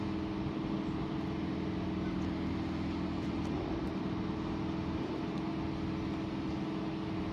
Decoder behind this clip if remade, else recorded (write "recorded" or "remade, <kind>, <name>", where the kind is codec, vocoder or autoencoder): recorded